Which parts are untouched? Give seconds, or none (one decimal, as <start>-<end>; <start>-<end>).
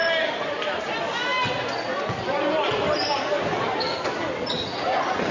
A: 0.0-5.3